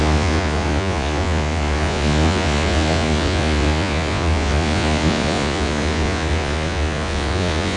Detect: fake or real fake